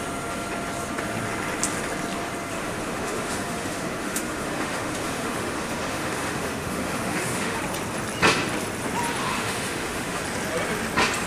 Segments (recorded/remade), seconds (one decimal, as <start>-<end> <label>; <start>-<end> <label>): 0.0-2.5 recorded; 2.5-7.6 remade; 7.6-9.3 recorded; 9.3-10.2 remade; 10.2-11.3 recorded